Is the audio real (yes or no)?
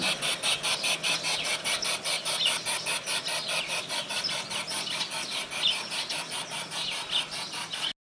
yes